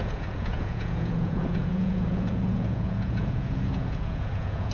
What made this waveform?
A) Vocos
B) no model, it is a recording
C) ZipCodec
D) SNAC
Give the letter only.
A